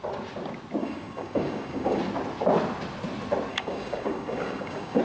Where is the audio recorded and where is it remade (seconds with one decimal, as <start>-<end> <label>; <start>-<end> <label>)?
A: 0.0-0.8 recorded; 0.8-2.0 remade; 2.0-3.5 recorded; 3.5-5.0 remade